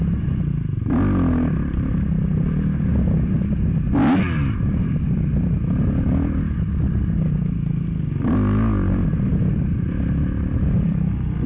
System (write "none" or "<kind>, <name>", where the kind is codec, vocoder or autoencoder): none